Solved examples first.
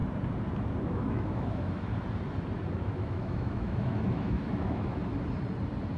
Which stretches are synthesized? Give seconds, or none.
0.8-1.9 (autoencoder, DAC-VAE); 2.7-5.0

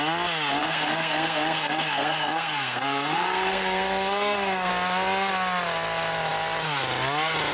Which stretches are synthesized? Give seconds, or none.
0.6-4.7 (codec, SNAC)

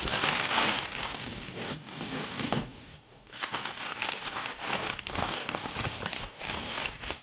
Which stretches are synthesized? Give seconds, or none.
0.0-5.7 (codec, DAC); 6.2-7.2

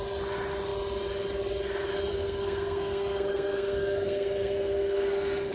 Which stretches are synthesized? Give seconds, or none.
2.1-5.5 (codec, SNAC)

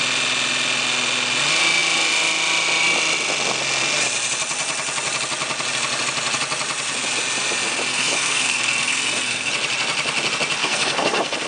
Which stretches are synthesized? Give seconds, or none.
7.9-9.5 (codec, SNAC); 10.6-11.5

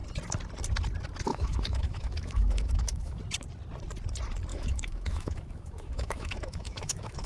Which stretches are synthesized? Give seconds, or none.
1.3-3.2 (autoencoder, DAC-VAE); 4.5-7.3

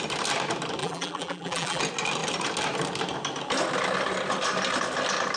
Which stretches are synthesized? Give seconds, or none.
0.8-1.8 (vocoder, BigVGAN v2)